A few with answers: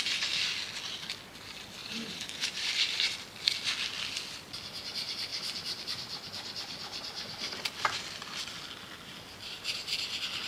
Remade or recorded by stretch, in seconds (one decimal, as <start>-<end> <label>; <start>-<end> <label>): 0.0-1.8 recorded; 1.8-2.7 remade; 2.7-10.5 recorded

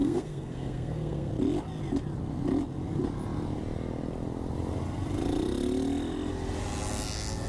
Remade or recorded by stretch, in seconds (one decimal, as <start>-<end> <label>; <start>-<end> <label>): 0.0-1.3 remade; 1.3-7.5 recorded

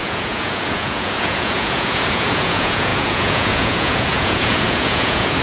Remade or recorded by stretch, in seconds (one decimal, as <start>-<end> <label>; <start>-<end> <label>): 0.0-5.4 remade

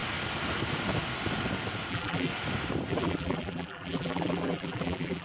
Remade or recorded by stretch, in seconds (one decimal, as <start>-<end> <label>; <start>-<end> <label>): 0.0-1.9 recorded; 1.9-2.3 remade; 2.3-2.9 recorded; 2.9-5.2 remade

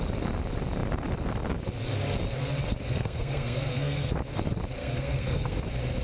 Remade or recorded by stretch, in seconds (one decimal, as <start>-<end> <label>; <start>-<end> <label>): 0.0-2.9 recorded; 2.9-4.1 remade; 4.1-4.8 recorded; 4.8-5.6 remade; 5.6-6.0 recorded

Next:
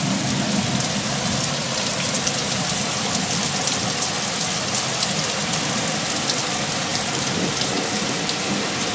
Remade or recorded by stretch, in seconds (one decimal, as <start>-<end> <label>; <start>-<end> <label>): 0.0-6.9 recorded; 6.9-7.5 remade; 7.5-8.9 recorded

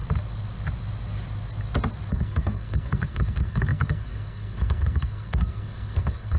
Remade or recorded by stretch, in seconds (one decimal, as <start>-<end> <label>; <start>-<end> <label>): 0.0-2.1 recorded; 2.1-6.4 remade

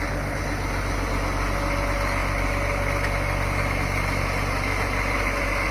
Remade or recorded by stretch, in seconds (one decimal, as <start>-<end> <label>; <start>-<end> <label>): 0.0-5.7 recorded